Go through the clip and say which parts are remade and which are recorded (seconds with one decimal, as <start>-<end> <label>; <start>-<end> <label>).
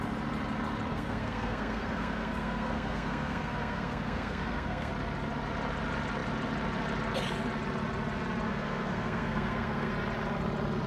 0.0-0.9 recorded; 0.9-4.9 remade; 4.9-8.5 recorded; 8.5-9.9 remade; 9.9-10.9 recorded